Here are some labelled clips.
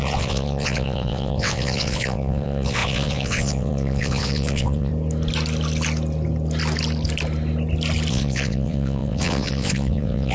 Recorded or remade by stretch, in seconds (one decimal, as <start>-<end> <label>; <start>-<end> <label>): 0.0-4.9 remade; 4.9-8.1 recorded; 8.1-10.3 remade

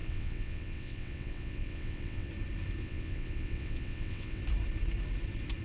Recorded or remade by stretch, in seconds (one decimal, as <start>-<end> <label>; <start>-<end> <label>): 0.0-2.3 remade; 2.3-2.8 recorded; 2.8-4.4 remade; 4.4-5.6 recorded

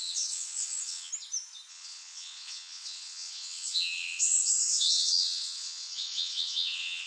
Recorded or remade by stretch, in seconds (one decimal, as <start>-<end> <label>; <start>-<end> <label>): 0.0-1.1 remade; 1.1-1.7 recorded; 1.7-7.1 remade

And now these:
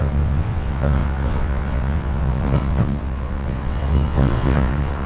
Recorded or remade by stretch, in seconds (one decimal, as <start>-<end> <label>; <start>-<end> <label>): 0.0-5.1 remade